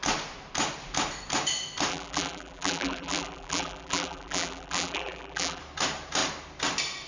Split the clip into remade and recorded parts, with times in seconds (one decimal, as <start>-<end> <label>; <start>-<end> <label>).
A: 0.0-1.9 recorded; 1.9-5.6 remade; 5.6-7.1 recorded